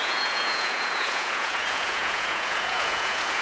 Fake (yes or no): yes